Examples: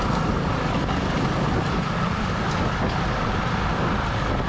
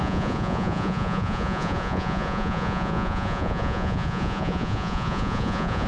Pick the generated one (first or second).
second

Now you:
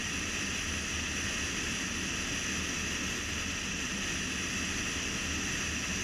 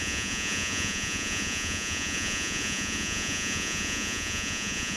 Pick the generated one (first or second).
second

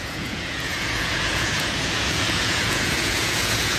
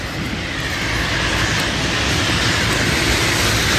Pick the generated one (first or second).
first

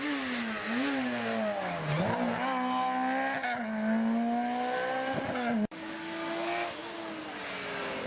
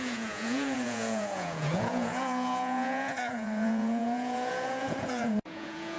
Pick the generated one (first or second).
second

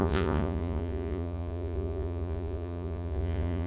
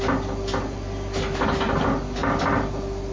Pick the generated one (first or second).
first